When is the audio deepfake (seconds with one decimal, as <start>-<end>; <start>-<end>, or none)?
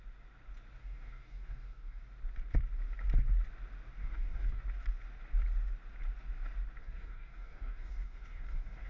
0.8-2.0; 4.0-4.6; 6.8-8.9